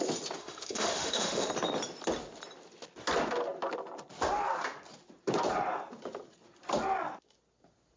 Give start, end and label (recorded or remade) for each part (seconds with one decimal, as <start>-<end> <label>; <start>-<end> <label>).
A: 0.0-0.4 recorded; 0.4-1.5 remade; 1.5-8.0 recorded